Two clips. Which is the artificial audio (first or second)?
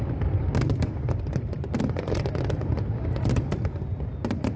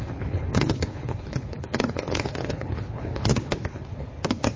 second